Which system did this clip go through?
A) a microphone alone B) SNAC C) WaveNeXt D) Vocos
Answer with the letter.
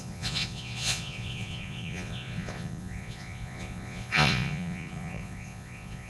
D